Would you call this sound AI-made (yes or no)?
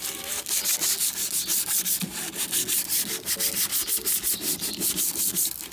no